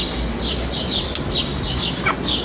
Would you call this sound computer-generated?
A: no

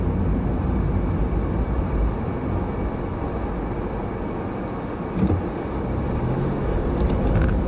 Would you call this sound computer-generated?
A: no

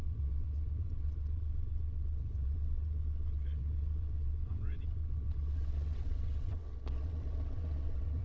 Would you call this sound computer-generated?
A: yes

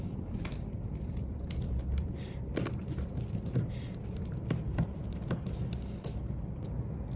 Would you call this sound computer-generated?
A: no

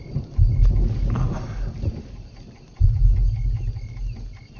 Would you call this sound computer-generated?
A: no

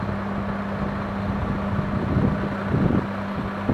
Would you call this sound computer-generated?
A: no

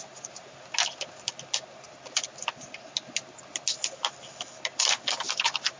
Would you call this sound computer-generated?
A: no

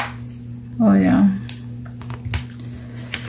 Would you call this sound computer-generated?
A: no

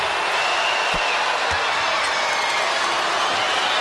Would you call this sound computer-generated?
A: no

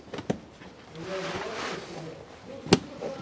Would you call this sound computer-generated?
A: no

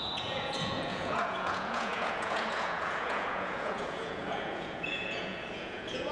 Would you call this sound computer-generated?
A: yes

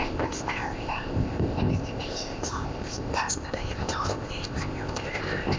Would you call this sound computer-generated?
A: yes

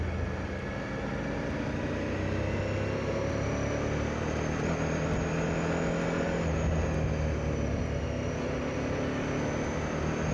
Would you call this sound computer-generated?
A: no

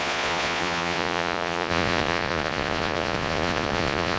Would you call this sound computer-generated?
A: yes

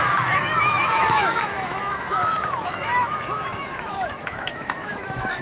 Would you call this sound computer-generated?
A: yes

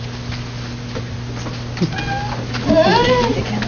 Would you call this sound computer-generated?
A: no